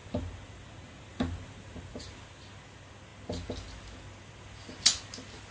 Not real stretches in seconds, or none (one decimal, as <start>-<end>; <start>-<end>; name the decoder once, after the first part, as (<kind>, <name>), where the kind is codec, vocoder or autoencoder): 0.0-2.0 (vocoder, BigVGAN v2)

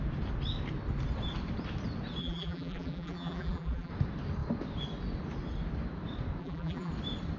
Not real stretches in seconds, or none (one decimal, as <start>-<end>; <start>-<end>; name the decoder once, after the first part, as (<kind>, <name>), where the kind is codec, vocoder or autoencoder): 2.2-3.9 (vocoder, BigVGAN v2); 6.4-6.9

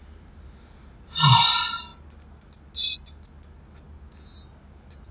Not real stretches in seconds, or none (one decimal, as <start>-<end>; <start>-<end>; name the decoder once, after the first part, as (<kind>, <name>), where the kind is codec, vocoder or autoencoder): 0.0-1.9 (vocoder, BigVGAN v2)

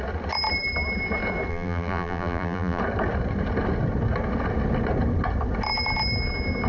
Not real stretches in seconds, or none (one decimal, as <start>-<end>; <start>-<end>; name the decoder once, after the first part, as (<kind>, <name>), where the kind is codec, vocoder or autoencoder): 1.5-2.8 (vocoder, BigVGAN v2)

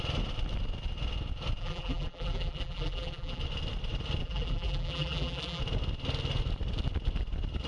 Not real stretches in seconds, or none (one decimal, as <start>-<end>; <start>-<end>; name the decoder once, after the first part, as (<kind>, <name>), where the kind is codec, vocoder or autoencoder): 1.6-3.4 (vocoder, BigVGAN v2); 4.2-5.6

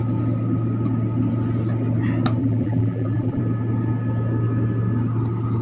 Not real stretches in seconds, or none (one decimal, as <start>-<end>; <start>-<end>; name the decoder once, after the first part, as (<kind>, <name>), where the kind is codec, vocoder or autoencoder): 2.4-3.4 (vocoder, BigVGAN v2)

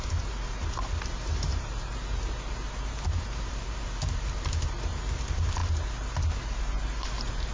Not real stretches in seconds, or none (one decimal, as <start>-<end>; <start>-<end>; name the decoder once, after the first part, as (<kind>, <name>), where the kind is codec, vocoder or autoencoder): 0.0-5.6 (vocoder, BigVGAN v2); 6.6-7.5